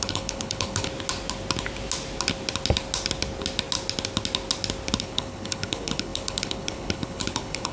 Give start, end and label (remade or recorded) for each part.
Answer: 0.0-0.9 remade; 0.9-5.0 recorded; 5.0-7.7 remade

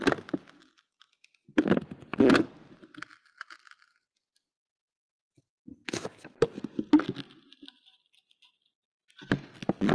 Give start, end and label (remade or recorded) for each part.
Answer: 0.0-9.9 recorded